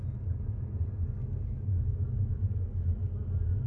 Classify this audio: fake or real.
real